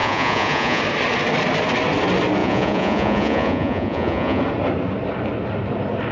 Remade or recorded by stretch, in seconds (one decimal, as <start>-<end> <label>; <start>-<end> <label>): 0.0-0.8 remade; 0.8-2.4 recorded; 2.4-4.4 remade; 4.4-6.1 recorded